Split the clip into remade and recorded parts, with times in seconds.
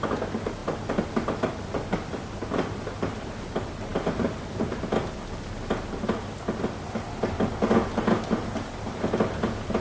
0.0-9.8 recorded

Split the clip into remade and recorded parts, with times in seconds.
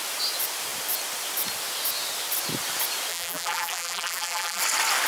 0.0-3.1 recorded; 3.1-4.6 remade; 4.6-5.1 recorded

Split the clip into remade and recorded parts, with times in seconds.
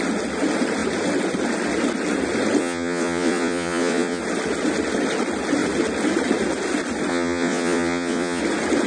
0.0-2.6 recorded; 2.6-4.2 remade; 4.2-7.1 recorded; 7.1-8.4 remade; 8.4-8.9 recorded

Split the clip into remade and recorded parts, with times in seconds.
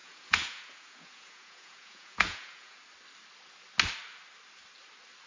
0.0-2.8 remade; 2.8-5.3 recorded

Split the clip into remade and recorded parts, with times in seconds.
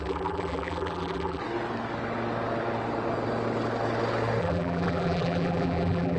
0.0-1.4 remade; 1.4-4.4 recorded; 4.4-6.2 remade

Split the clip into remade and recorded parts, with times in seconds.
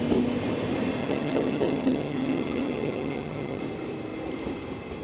0.0-1.0 recorded; 1.0-3.6 remade; 3.6-5.0 recorded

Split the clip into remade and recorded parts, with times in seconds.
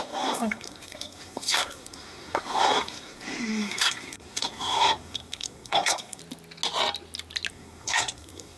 0.0-6.2 remade; 6.2-7.5 recorded; 7.5-8.6 remade